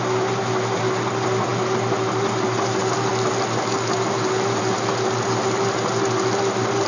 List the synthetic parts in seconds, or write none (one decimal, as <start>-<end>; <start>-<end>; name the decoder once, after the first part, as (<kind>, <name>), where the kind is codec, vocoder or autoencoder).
none